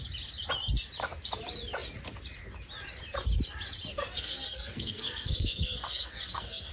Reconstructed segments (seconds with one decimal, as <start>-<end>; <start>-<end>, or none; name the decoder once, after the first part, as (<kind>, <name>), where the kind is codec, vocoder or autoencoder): 3.9-6.7 (codec, SNAC)